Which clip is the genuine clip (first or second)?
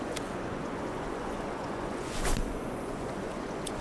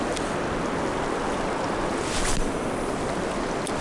second